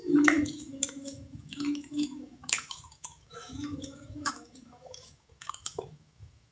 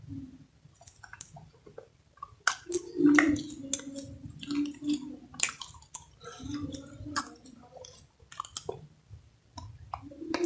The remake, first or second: first